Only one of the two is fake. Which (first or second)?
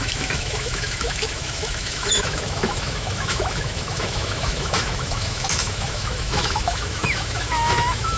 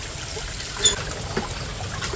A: first